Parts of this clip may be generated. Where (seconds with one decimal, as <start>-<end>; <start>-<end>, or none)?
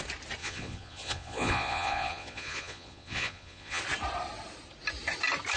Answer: 0.4-3.8